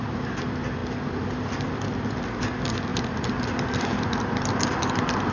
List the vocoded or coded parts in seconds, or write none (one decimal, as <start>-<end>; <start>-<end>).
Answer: 2.9-3.5; 3.9-5.3